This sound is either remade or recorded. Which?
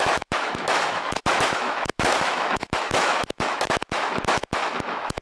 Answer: remade